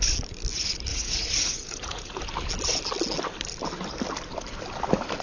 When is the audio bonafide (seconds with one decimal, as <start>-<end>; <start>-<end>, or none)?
0.0-0.9; 2.1-5.2